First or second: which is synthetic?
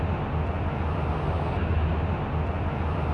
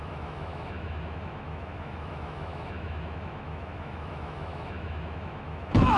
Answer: second